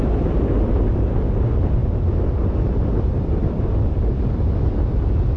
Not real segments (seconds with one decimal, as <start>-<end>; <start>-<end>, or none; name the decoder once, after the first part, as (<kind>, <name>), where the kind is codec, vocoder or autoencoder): none